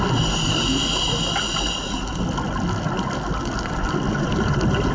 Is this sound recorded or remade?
recorded